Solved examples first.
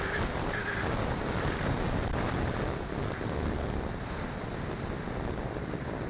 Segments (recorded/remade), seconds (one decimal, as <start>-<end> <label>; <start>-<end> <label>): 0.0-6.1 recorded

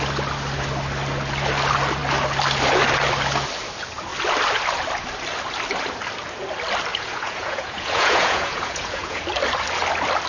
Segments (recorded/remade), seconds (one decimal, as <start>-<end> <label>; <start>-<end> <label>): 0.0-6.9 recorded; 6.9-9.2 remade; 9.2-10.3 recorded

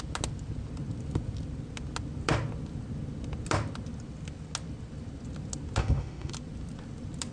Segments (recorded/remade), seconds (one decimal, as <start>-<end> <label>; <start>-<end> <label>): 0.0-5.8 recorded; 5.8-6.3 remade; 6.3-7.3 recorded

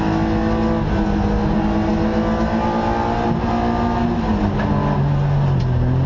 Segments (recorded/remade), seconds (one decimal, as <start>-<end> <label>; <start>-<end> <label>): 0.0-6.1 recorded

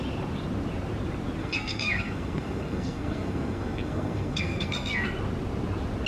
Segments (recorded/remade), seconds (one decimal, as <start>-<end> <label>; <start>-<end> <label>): 0.0-1.4 recorded; 1.4-5.1 remade; 5.1-6.1 recorded

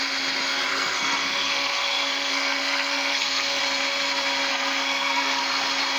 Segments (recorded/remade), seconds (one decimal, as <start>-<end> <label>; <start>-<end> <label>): 0.0-0.7 recorded; 0.7-3.6 remade; 3.6-4.5 recorded; 4.5-5.4 remade; 5.4-6.0 recorded

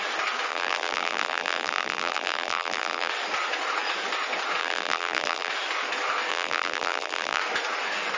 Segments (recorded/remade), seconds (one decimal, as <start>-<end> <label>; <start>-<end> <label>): 0.0-0.5 recorded; 0.5-3.1 remade; 3.1-4.6 recorded; 4.6-5.5 remade; 5.5-6.3 recorded; 6.3-7.4 remade; 7.4-8.2 recorded